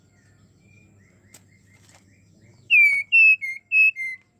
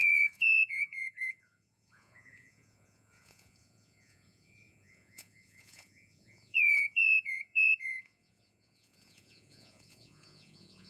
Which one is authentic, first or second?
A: first